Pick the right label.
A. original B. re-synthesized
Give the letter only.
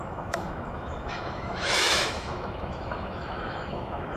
B